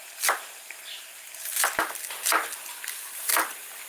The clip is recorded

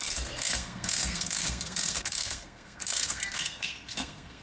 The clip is remade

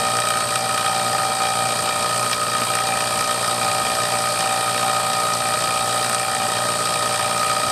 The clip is recorded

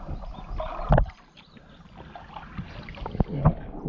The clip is recorded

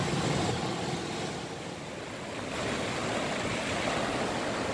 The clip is recorded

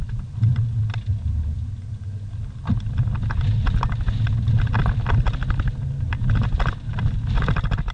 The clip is recorded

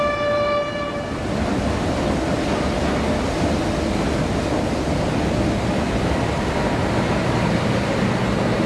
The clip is recorded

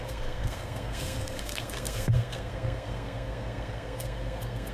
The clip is remade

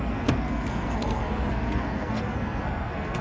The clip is remade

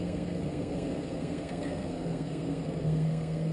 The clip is remade